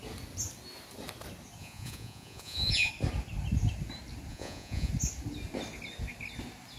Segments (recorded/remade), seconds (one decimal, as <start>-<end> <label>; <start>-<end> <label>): 0.0-1.6 recorded; 1.6-2.9 remade; 2.9-4.3 recorded; 4.3-4.9 remade; 4.9-6.8 recorded